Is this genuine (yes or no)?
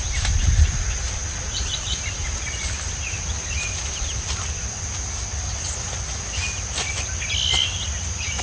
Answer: yes